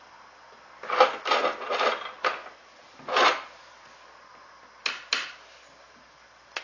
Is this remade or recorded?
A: recorded